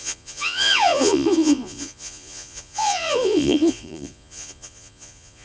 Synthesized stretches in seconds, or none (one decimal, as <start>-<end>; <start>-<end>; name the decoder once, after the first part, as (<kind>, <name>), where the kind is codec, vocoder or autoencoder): 0.0-5.4 (vocoder, Vocos)